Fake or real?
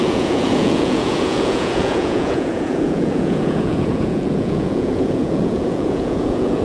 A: fake